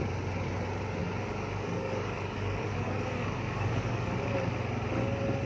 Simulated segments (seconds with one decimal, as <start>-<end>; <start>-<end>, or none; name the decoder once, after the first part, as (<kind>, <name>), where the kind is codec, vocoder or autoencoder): 1.0-4.3 (codec, DAC)